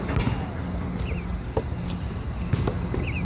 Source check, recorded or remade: recorded